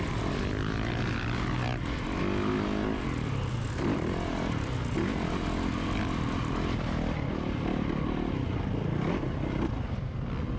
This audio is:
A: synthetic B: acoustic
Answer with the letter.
B